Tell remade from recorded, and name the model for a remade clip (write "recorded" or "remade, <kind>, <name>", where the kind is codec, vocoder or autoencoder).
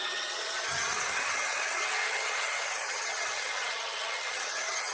remade, vocoder, HiFi-GAN